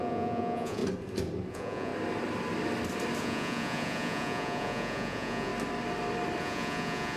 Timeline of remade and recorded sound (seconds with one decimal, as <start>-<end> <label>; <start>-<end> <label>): 0.0-0.8 remade; 0.8-1.5 recorded; 1.5-1.9 remade; 1.9-3.2 recorded; 3.2-5.5 remade; 5.5-6.4 recorded; 6.4-7.2 remade